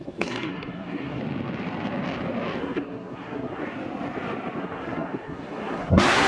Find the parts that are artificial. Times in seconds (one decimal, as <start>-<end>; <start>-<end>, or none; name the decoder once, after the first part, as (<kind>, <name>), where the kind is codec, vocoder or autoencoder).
0.0-1.2 (codec, SNAC); 2.6-3.6; 4.6-6.3